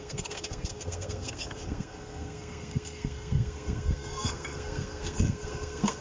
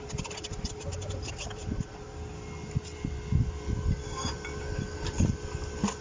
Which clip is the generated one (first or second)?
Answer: first